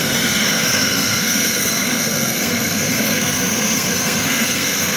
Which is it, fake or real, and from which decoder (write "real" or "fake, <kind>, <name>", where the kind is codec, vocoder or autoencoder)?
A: fake, codec, SNAC